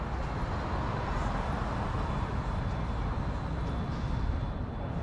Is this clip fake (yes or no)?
no